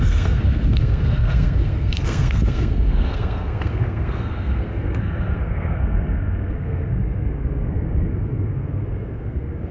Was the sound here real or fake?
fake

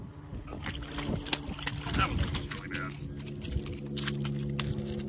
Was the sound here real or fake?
real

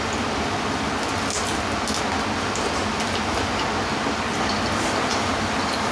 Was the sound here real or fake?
real